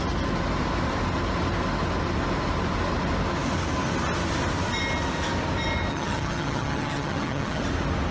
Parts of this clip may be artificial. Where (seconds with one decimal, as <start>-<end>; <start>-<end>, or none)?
5.9-7.6